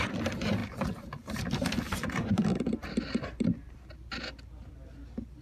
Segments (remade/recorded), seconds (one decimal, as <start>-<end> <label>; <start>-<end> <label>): 0.0-5.4 recorded